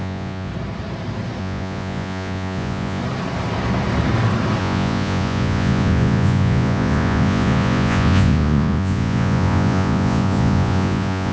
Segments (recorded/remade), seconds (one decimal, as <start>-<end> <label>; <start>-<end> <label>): 0.0-0.5 remade; 0.5-1.4 recorded; 1.4-3.0 remade; 3.0-4.6 recorded; 4.6-11.3 remade